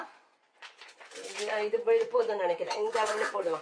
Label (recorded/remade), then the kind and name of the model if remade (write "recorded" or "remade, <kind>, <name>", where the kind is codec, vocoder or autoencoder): remade, vocoder, Vocos